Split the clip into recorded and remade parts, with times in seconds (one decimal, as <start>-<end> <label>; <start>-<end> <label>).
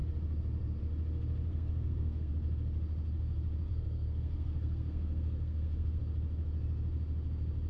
0.0-1.5 recorded; 1.5-2.3 remade; 2.3-3.7 recorded; 3.7-6.0 remade; 6.0-7.7 recorded